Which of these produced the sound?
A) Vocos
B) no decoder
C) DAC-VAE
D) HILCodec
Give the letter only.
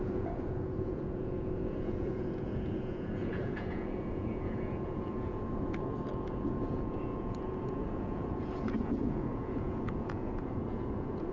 A